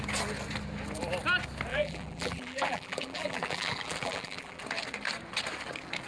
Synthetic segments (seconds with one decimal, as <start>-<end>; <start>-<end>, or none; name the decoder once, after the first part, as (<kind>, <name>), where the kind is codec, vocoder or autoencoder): 1.7-4.6 (vocoder, BigVGAN v2)